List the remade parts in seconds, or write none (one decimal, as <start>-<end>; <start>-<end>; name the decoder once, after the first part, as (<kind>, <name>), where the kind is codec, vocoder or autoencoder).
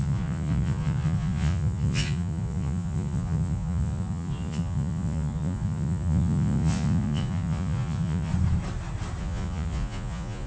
0.0-8.3 (vocoder, Vocos); 9.2-10.5